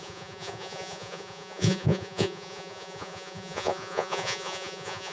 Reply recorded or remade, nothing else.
remade